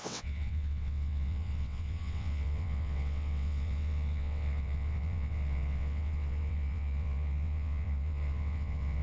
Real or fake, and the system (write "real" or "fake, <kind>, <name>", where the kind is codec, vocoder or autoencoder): fake, vocoder, WaveNeXt